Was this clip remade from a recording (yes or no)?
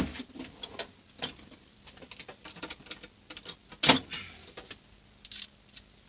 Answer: no